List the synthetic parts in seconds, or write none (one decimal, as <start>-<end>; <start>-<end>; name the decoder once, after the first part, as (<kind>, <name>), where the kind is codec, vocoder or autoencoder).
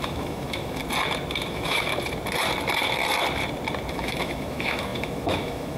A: 0.0-0.8 (autoencoder, DAC-VAE); 1.5-1.9; 3.9-5.8